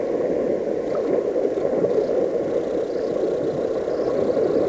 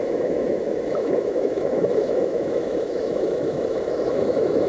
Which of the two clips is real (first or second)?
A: first